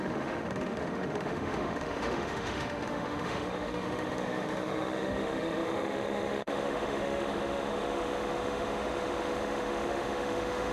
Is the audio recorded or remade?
remade